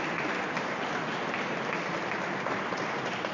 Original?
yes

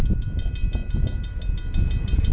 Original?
yes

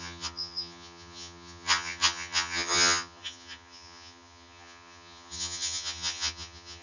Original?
no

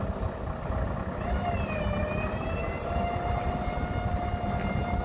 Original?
yes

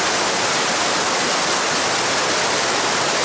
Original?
yes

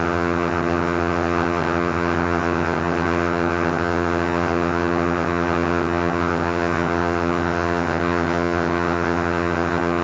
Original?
no